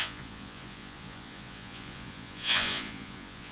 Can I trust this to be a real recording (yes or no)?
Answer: no